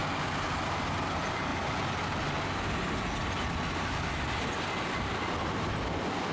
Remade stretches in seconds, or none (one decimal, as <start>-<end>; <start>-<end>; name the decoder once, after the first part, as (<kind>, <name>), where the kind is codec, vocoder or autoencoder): none

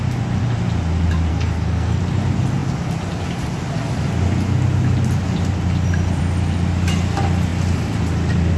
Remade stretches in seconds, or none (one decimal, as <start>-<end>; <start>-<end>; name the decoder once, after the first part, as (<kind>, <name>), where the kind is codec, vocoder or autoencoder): 1.3-2.0 (codec, SNAC)